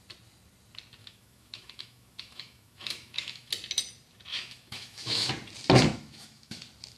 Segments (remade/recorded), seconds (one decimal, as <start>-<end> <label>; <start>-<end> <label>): 0.0-1.0 recorded; 1.0-3.5 remade; 3.5-4.3 recorded; 4.3-5.3 remade; 5.3-5.9 recorded; 5.9-6.6 remade; 6.6-7.0 recorded